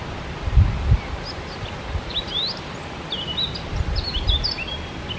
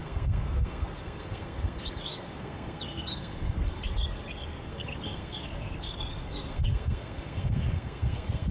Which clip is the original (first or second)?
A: first